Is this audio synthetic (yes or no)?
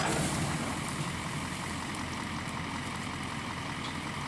no